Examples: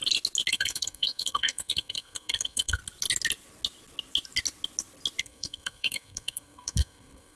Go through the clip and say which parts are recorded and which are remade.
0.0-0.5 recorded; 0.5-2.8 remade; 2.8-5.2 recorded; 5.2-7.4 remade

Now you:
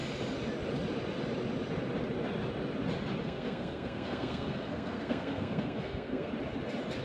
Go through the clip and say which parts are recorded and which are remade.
0.0-3.2 recorded; 3.2-6.3 remade; 6.3-7.0 recorded